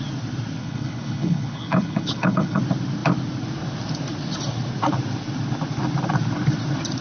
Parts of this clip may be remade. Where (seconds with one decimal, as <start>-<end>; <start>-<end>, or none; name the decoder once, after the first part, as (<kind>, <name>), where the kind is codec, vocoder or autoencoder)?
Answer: 0.6-2.6 (codec, HILCodec)